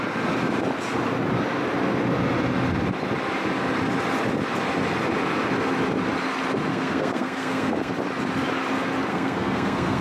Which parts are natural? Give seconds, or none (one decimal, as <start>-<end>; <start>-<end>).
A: 0.0-6.7; 7.9-9.1